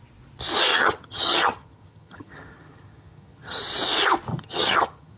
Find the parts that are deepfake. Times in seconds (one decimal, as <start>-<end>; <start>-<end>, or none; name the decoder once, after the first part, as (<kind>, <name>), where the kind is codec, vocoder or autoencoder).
0.7-3.6 (vocoder, HiFi-GAN); 4.3-5.2